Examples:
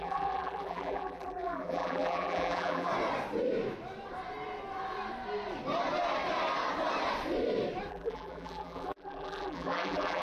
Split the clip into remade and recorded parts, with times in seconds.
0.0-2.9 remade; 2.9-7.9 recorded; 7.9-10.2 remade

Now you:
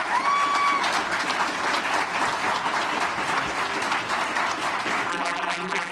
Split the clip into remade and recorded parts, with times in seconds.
0.0-5.1 recorded; 5.1-5.9 remade